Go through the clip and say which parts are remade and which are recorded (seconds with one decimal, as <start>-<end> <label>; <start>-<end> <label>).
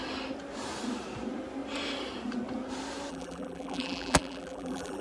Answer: 0.0-3.1 recorded; 3.1-5.0 remade